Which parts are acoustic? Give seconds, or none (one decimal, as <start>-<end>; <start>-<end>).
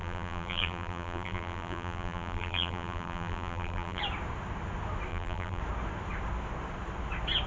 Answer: 4.0-5.1; 5.6-7.5